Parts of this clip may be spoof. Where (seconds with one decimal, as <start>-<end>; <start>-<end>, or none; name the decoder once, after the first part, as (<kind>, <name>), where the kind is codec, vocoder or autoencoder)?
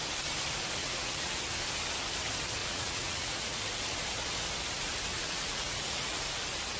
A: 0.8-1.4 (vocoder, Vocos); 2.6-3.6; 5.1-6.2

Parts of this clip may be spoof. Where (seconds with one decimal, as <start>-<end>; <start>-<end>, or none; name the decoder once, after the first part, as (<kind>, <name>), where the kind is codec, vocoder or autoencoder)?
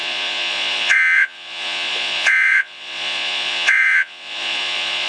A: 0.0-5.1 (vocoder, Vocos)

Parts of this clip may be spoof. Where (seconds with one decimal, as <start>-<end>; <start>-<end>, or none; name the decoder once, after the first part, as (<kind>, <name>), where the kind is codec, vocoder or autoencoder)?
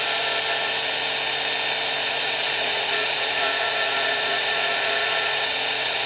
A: 2.0-6.1 (vocoder, Vocos)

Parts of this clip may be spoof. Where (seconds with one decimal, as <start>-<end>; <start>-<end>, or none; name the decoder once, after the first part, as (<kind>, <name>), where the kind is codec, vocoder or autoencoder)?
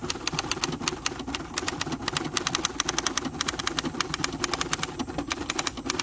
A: none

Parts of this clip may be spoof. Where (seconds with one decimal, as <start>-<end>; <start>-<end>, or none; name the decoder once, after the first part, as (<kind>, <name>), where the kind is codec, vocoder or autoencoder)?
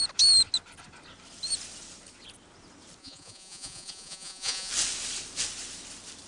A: 3.0-4.7 (vocoder, Vocos)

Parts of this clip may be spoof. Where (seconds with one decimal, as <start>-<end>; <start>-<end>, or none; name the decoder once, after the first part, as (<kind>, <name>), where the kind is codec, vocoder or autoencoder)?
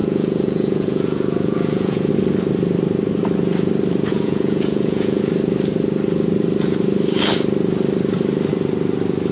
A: 0.0-2.1 (vocoder, Vocos); 4.1-5.2